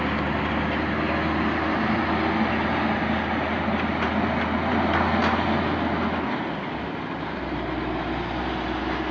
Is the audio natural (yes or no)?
yes